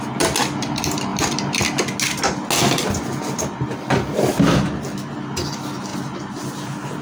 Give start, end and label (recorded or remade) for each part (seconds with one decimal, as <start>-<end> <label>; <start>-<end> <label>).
0.0-5.9 recorded; 5.9-6.5 remade; 6.5-7.0 recorded